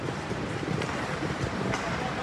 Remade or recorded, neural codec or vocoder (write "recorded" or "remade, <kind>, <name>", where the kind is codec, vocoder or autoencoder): remade, vocoder, BigVGAN v2